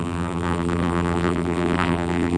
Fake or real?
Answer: fake